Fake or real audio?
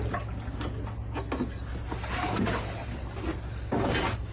real